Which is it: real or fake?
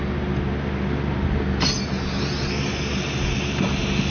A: real